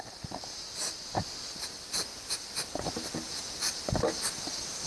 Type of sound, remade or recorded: recorded